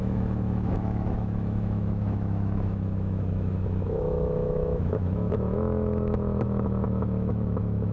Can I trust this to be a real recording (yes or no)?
no